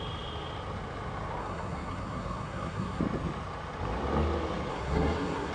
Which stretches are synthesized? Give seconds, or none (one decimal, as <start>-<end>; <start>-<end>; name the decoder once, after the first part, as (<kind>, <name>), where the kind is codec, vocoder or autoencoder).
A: 1.4-3.0 (codec, SNAC); 4.7-5.5